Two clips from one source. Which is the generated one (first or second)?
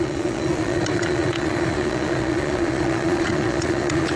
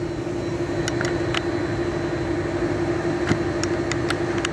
first